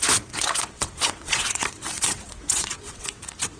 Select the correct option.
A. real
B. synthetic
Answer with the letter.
B